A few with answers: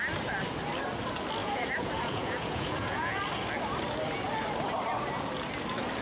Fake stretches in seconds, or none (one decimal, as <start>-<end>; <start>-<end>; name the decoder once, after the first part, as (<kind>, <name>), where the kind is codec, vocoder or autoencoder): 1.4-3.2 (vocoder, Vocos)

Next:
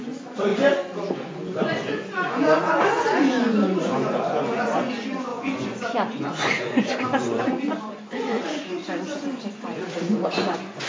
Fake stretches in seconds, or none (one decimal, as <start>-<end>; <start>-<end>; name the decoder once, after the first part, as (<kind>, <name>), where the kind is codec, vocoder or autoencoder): 0.0-0.5 (vocoder, Vocos); 1.1-10.9

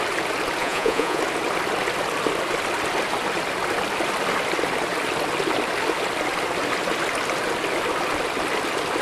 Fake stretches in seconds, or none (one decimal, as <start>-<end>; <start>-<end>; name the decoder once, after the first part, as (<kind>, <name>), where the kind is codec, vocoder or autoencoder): 0.6-1.2 (vocoder, Vocos)

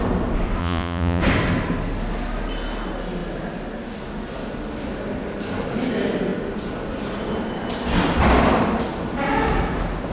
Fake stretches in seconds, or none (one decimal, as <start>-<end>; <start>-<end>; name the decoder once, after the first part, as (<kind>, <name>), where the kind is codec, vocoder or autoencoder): 0.6-1.2 (vocoder, Vocos)

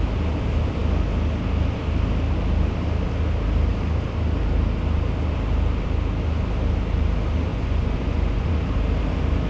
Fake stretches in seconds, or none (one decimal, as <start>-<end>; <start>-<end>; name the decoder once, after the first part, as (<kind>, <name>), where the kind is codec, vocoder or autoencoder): 7.5-8.5 (vocoder, Vocos)

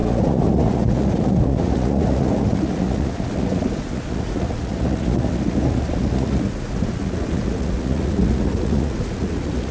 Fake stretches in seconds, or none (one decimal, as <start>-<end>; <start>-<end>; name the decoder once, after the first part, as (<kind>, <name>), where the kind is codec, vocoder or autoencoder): 0.0-9.7 (vocoder, Vocos)

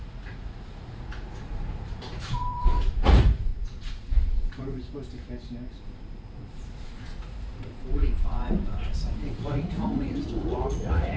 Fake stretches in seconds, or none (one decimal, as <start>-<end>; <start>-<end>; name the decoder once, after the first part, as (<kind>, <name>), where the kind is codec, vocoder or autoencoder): 0.0-4.8 (vocoder, Vocos); 5.7-11.2